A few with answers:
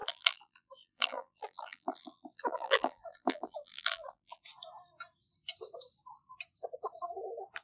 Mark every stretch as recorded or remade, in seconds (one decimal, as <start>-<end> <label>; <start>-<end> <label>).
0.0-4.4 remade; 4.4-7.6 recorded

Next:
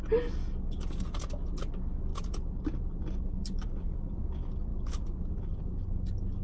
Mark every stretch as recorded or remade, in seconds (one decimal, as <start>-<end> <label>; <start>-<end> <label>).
0.0-2.1 recorded; 2.1-3.0 remade; 3.0-3.4 recorded; 3.4-4.2 remade; 4.2-4.7 recorded; 4.7-5.6 remade; 5.6-6.4 recorded

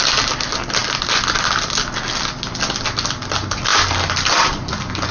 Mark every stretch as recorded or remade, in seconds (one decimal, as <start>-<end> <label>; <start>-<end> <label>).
0.0-5.1 recorded